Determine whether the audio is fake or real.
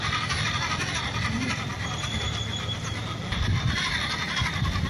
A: real